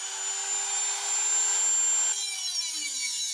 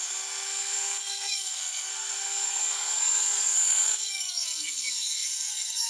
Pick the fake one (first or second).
second